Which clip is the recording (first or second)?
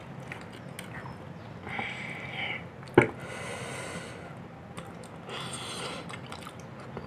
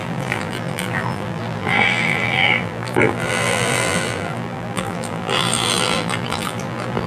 first